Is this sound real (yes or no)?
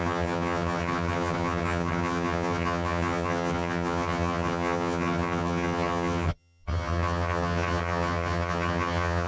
no